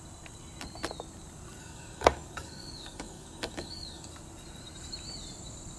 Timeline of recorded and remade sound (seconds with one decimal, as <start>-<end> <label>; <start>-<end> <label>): 0.0-1.6 recorded; 1.6-4.1 remade; 4.1-5.8 recorded